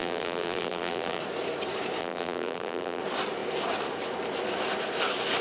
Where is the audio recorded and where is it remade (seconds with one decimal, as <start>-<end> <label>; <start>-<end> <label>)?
0.0-1.2 remade; 1.2-2.0 recorded; 2.0-3.0 remade; 3.0-5.4 recorded